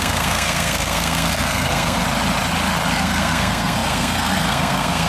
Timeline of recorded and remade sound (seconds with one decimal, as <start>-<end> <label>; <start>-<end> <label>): 0.0-2.0 remade; 2.0-2.9 recorded; 2.9-5.1 remade